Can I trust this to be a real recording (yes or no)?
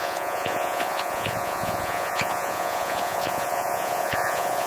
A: no